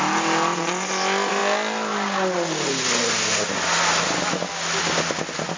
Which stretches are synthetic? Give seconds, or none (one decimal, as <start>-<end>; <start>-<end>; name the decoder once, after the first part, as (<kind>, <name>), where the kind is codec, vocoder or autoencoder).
none